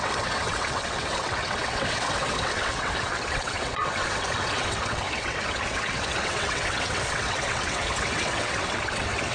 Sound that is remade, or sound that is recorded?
remade